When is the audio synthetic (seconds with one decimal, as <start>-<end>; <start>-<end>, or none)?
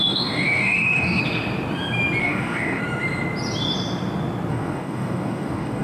0.0-1.2; 2.2-2.8; 4.5-5.8